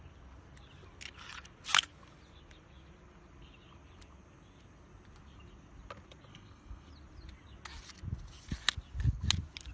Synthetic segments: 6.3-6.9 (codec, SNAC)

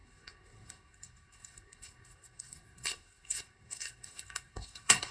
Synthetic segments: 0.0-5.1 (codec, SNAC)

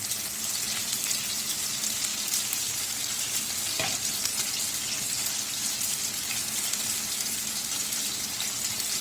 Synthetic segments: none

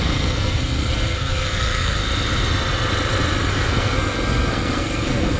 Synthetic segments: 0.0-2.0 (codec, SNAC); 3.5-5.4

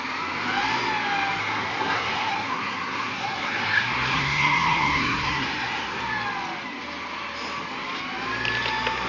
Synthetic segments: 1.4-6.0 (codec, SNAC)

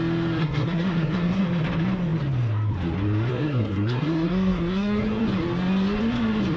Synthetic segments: 0.4-1.4 (codec, SNAC); 3.3-5.2

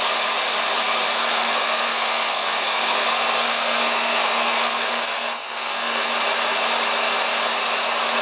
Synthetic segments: 1.2-6.1 (codec, SNAC)

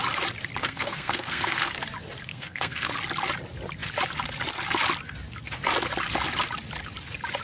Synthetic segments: 0.6-1.7 (codec, SNAC); 2.3-2.9